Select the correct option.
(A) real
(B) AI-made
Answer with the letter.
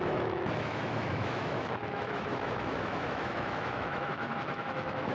B